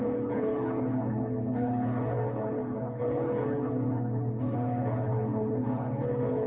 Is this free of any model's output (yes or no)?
no